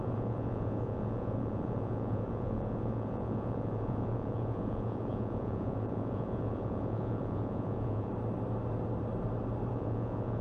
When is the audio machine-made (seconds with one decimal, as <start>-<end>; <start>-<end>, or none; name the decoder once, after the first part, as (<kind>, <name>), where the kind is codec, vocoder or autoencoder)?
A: 0.0-8.1 (vocoder, Vocos); 9.7-10.4